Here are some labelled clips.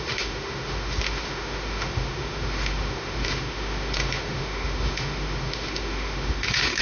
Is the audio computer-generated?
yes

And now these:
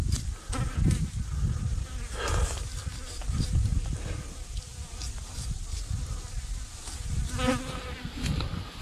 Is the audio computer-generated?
no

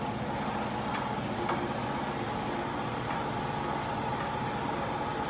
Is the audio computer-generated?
no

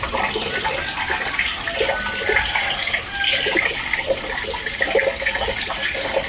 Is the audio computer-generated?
no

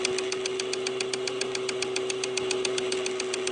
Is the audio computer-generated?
no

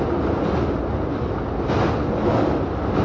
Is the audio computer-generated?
no